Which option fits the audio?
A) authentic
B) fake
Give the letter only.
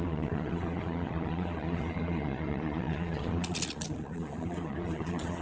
B